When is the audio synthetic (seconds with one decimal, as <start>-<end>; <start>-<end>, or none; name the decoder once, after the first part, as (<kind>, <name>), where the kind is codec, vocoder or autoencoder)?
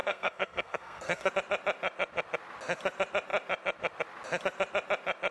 0.0-1.3 (codec, SNAC)